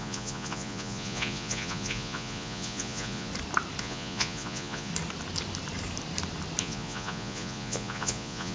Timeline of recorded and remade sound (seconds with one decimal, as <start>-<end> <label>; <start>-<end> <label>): 0.0-3.3 remade; 3.3-3.8 recorded; 3.8-4.9 remade; 4.9-6.6 recorded; 6.6-8.5 remade